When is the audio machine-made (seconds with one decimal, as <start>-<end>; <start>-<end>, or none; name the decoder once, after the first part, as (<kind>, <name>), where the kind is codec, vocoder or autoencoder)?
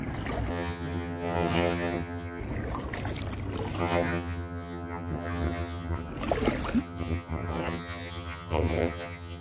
0.5-2.4 (vocoder, HiFi-GAN); 3.8-6.1; 6.8-9.4